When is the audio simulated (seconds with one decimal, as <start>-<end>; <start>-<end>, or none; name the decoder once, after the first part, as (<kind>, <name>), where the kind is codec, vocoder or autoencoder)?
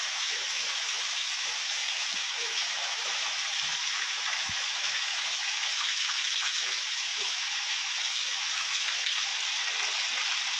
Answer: 0.0-9.3 (autoencoder, DAC-VAE)